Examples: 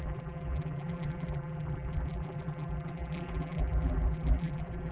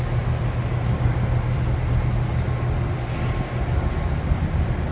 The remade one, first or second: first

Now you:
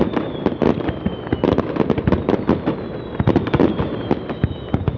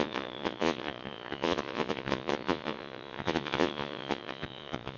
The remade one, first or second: second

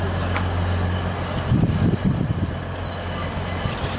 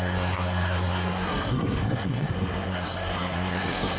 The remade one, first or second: second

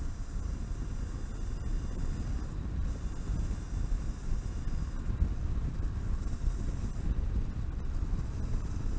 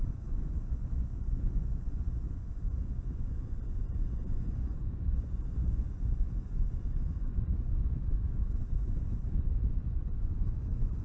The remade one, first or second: second